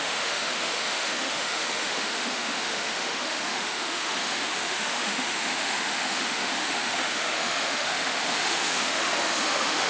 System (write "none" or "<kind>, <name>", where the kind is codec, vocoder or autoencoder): autoencoder, DAC-VAE